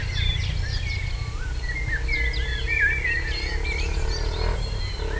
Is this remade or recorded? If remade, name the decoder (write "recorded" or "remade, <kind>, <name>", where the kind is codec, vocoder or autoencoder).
recorded